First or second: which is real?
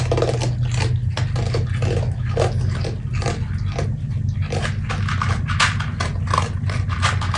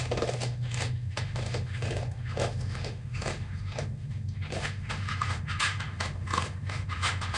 first